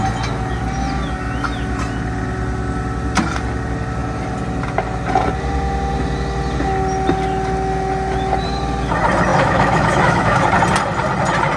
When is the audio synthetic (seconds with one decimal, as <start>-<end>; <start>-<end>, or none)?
9.3-10.5